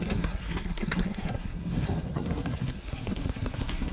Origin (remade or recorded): remade